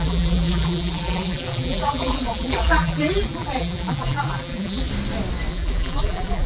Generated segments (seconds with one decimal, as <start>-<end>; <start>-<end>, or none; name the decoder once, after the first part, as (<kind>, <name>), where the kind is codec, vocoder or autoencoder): 0.0-4.9 (vocoder, BigVGAN v2); 5.5-6.5